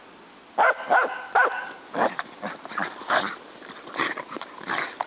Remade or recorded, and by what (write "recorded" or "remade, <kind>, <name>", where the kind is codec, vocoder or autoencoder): remade, vocoder, BigVGAN v2